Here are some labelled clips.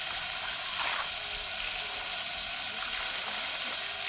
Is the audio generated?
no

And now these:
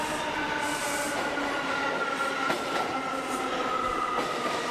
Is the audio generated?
no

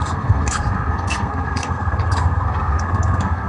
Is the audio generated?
yes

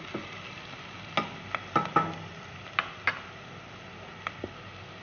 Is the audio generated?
no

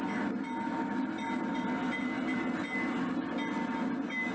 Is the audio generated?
no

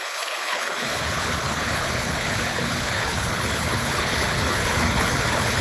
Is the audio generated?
yes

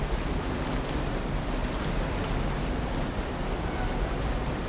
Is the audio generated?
no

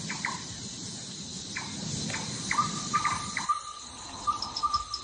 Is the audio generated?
no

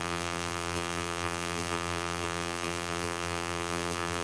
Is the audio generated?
yes